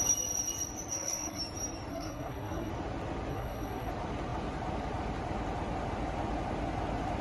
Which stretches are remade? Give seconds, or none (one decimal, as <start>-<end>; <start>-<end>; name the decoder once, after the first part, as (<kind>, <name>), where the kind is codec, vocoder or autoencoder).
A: 0.9-1.4 (codec, SNAC); 1.9-2.7; 3.3-3.9